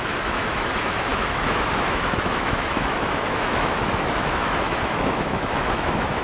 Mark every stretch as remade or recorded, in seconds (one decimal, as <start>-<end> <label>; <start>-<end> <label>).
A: 0.0-6.2 remade